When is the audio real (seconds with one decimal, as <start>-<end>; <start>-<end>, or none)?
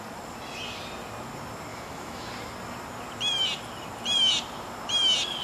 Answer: 0.0-1.7; 2.3-5.4